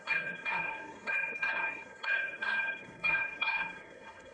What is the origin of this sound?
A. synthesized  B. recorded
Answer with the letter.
A